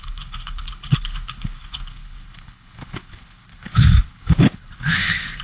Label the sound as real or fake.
fake